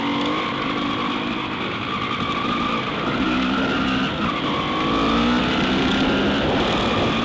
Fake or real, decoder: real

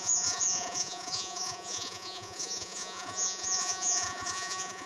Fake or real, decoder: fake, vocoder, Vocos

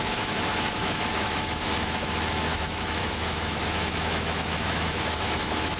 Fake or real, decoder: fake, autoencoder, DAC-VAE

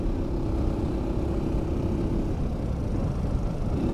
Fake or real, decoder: fake, vocoder, BigVGAN v2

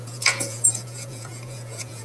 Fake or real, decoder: fake, vocoder, Vocos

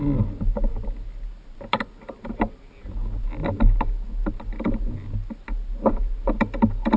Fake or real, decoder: real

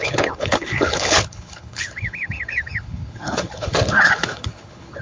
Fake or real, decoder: fake, codec, HILCodec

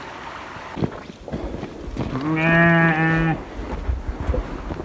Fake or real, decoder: real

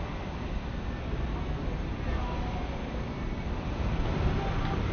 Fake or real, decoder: real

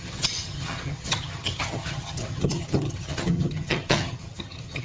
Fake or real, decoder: fake, vocoder, HiFi-GAN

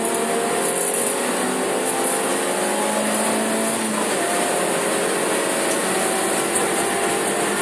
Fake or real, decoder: real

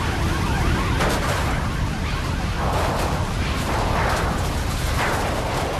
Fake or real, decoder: real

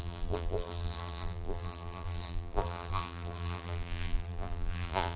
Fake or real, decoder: fake, vocoder, BigVGAN v2